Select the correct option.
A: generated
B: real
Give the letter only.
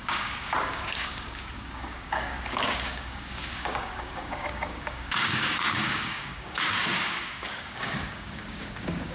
A